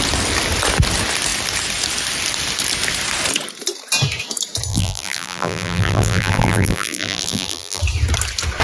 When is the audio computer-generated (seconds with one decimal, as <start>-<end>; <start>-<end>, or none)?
4.7-7.8